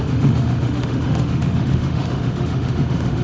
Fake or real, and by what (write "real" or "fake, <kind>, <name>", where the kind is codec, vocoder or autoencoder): fake, autoencoder, DAC-VAE